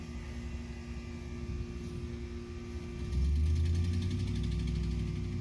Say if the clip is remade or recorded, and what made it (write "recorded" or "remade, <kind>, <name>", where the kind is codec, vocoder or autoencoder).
recorded